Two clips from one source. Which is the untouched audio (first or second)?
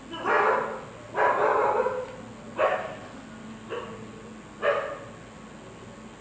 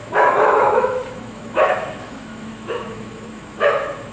first